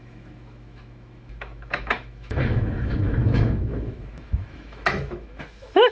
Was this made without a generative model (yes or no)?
no